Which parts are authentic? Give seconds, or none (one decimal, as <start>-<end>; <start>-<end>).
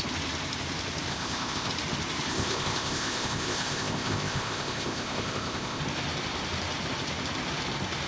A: 0.0-1.1; 1.7-2.3; 5.8-8.1